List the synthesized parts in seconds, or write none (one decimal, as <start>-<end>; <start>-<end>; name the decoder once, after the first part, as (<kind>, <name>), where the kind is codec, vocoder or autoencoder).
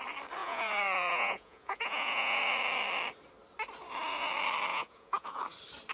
0.4-2.4 (vocoder, Vocos); 4.7-5.4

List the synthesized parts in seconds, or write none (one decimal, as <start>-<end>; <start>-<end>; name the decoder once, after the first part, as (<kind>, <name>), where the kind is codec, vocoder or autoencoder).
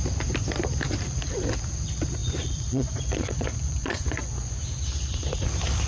2.2-4.6 (vocoder, Vocos)